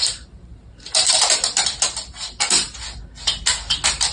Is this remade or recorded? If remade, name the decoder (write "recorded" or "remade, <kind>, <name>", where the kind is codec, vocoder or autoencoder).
recorded